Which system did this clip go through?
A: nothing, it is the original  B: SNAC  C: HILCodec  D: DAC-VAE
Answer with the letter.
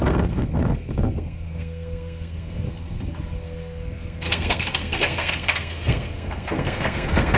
B